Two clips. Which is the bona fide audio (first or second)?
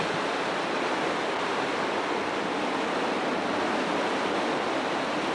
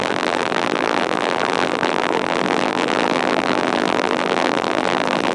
first